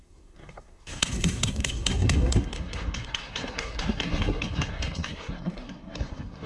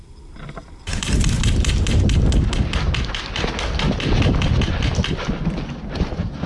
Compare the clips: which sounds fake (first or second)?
first